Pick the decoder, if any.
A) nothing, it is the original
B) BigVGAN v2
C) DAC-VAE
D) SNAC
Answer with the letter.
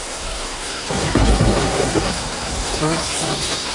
D